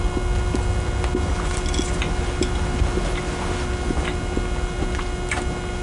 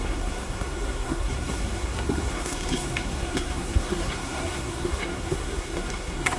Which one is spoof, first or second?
second